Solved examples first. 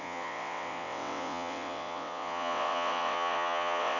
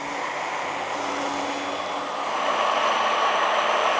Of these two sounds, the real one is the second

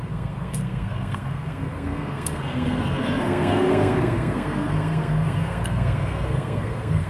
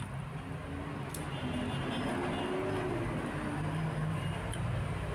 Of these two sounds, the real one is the second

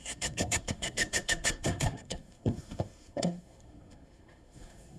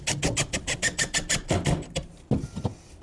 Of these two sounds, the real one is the second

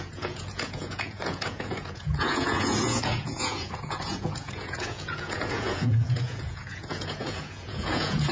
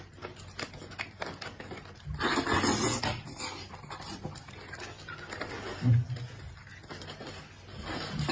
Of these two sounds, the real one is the second